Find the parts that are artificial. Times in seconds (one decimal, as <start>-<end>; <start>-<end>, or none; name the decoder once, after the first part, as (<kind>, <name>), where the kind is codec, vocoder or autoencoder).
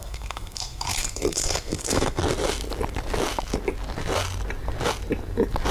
0.0-2.2 (codec, SNAC)